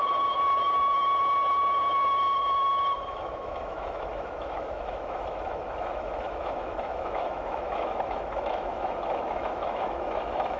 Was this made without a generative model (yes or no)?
no